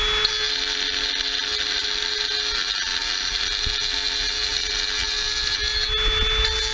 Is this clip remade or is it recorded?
recorded